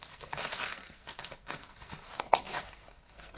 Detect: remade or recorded remade